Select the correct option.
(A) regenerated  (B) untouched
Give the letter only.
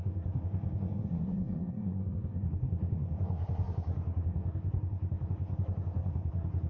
A